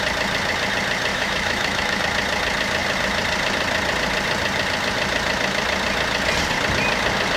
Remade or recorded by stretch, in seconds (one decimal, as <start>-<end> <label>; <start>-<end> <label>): 0.0-1.1 recorded; 1.1-2.0 remade; 2.0-7.4 recorded